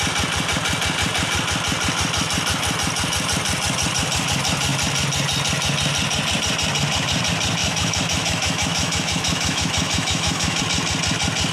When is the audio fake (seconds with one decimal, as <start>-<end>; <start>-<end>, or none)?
7.6-10.6